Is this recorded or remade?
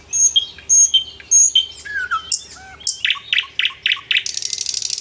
recorded